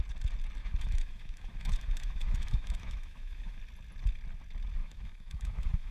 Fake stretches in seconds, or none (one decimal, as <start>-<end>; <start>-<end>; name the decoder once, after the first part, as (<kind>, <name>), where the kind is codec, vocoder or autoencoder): 0.6-3.6 (autoencoder, DAC-VAE); 4.8-5.9